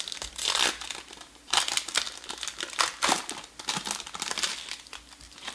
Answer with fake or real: real